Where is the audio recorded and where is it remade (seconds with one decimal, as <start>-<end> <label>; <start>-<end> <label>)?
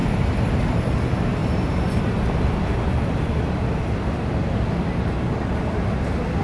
0.0-0.8 remade; 0.8-1.4 recorded; 1.4-2.0 remade; 2.0-6.4 recorded